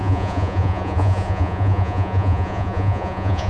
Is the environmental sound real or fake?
fake